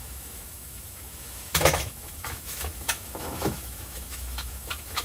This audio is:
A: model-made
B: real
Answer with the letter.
A